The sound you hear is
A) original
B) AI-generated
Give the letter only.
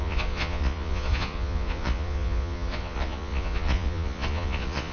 B